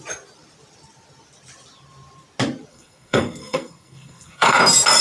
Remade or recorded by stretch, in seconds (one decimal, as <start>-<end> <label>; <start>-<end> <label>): 0.0-2.7 recorded; 2.7-4.6 remade; 4.6-5.0 recorded